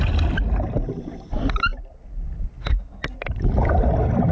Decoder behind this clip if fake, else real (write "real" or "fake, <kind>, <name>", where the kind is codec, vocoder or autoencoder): real